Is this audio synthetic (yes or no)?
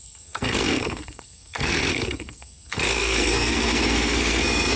yes